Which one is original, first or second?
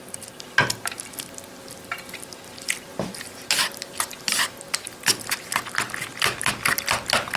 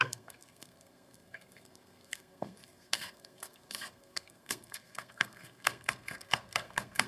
first